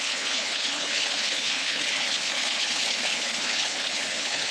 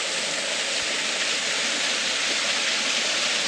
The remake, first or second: first